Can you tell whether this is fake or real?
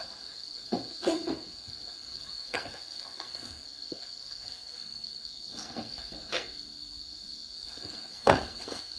fake